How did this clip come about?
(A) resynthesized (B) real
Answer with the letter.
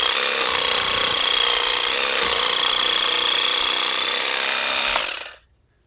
B